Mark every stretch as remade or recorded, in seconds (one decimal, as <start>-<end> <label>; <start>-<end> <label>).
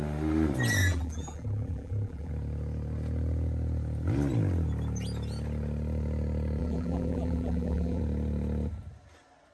0.0-0.8 recorded; 0.8-2.3 remade; 2.3-6.6 recorded; 6.6-8.0 remade; 8.0-9.5 recorded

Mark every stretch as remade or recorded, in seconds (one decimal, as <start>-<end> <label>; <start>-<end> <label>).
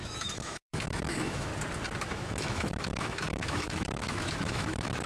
0.0-1.5 remade; 1.5-2.0 recorded; 2.0-5.1 remade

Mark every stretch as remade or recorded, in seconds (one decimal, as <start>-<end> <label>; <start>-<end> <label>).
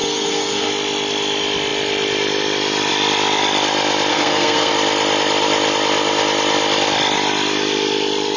0.0-0.7 remade; 0.7-4.1 recorded; 4.1-4.7 remade; 4.7-8.4 recorded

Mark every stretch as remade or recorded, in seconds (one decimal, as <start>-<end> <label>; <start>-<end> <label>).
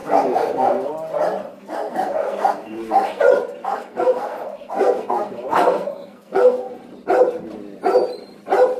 0.0-0.9 remade; 0.9-1.5 recorded; 1.5-3.2 remade; 3.2-3.6 recorded; 3.6-6.8 remade; 6.8-8.8 recorded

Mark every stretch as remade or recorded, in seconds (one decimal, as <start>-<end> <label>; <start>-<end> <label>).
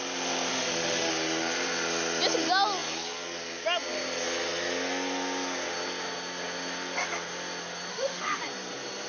0.0-0.5 recorded; 0.5-1.1 remade; 1.1-7.9 recorded; 7.9-8.4 remade; 8.4-9.1 recorded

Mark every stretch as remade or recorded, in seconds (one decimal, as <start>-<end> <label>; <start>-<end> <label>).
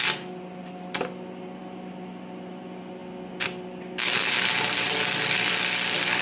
0.0-6.2 recorded